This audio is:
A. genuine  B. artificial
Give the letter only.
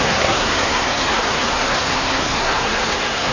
B